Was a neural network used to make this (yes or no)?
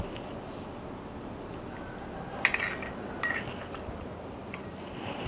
no